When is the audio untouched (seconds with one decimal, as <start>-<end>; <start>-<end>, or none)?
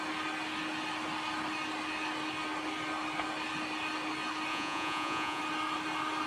0.0-4.5; 5.4-6.3